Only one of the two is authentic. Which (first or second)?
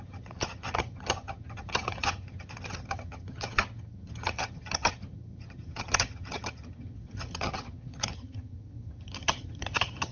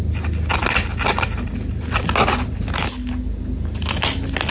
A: second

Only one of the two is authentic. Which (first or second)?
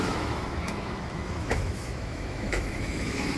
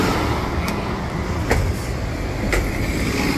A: second